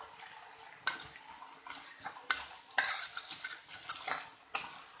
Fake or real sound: real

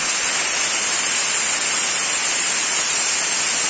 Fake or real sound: real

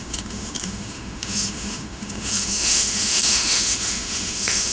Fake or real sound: fake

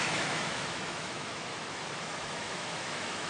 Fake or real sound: fake